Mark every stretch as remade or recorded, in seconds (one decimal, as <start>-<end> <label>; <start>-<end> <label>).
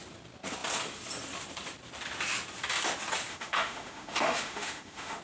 0.0-3.3 recorded; 3.3-5.2 remade